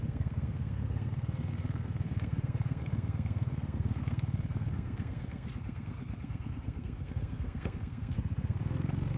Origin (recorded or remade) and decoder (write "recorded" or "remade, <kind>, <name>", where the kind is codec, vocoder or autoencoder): remade, codec, SNAC